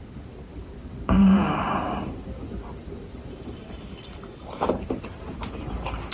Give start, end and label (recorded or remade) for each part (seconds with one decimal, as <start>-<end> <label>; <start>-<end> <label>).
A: 0.0-0.5 recorded; 0.5-2.0 remade; 2.0-2.8 recorded; 2.8-3.8 remade; 3.8-4.4 recorded; 4.4-5.1 remade; 5.1-6.1 recorded